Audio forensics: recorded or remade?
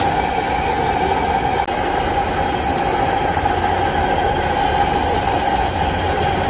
recorded